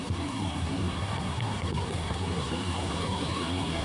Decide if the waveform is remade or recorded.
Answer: remade